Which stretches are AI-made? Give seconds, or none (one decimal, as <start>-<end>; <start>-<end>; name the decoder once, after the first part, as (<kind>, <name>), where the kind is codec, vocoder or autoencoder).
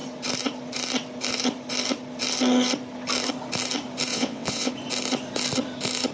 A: 4.1-4.7 (vocoder, WaveNeXt)